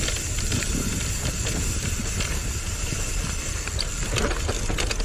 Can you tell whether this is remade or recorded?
recorded